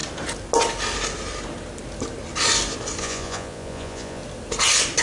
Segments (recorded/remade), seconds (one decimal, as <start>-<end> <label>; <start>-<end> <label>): 0.0-3.0 recorded; 3.0-4.2 remade; 4.2-5.0 recorded